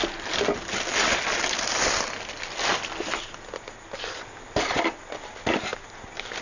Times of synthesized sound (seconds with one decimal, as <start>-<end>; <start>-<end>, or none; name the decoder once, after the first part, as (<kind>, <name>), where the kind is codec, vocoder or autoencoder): none